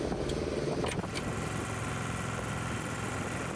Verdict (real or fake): real